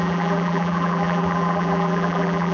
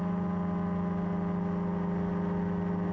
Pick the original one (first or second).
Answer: second